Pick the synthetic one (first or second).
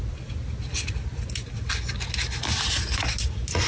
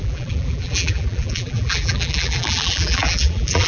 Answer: second